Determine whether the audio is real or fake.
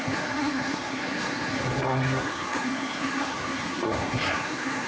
fake